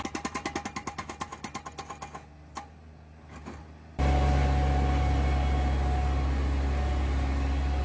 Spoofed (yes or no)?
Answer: no